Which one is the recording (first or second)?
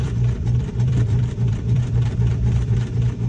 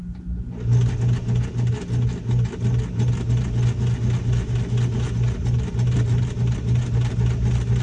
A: second